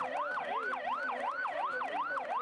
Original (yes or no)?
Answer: yes